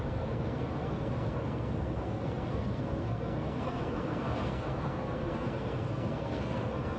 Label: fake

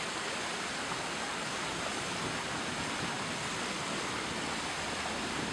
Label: real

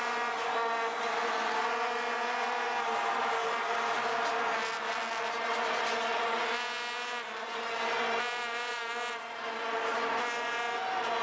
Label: real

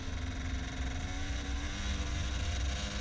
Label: real